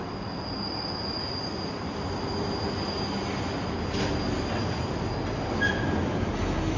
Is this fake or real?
real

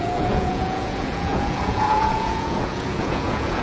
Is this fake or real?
fake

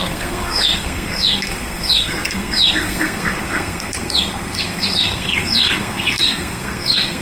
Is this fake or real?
fake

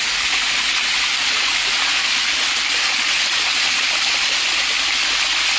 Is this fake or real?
real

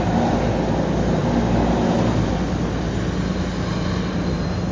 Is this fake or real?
real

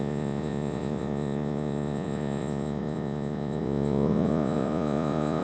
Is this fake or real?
fake